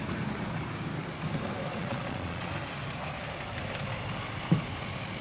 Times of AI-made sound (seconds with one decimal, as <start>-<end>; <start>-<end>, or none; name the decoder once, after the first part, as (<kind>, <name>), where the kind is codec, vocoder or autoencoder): 1.7-2.5 (vocoder, Vocos)